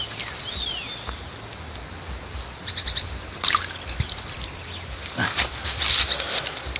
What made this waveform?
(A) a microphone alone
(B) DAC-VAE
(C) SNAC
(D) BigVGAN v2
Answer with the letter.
A